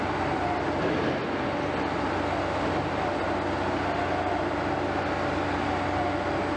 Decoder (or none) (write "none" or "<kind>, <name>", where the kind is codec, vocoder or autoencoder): none